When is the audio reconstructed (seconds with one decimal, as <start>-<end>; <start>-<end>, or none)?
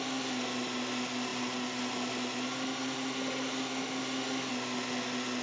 none